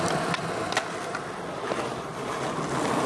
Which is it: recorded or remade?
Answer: recorded